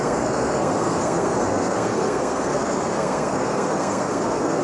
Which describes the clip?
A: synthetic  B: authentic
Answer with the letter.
A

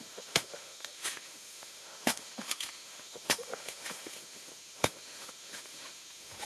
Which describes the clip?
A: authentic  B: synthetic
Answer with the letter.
B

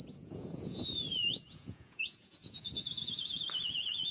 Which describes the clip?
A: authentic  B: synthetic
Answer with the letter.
B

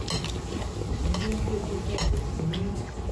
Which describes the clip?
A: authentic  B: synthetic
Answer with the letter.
A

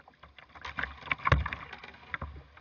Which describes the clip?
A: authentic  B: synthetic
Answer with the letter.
A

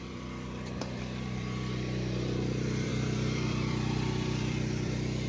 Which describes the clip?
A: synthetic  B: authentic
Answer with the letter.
A